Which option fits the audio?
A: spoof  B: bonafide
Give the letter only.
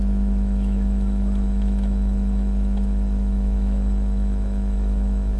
A